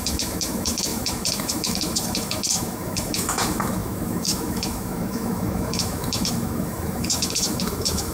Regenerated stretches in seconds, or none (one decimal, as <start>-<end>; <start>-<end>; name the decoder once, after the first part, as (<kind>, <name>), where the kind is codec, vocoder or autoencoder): 0.0-8.1 (autoencoder, DAC-VAE)